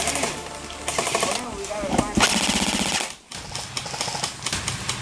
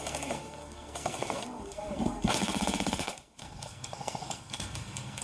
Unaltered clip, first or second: first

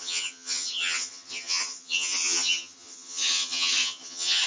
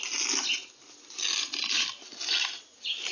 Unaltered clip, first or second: second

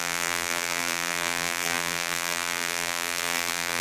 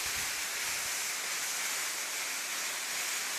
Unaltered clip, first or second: second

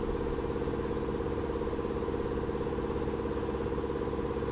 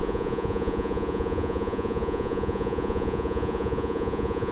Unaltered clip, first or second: first